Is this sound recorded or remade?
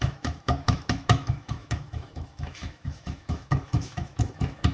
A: remade